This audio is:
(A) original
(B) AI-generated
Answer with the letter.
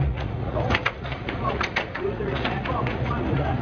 B